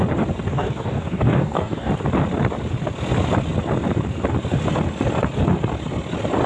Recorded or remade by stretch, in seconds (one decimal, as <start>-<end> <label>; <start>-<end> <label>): 0.0-0.5 recorded; 0.5-1.9 remade; 1.9-6.5 recorded